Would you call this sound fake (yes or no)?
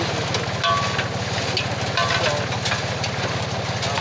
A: no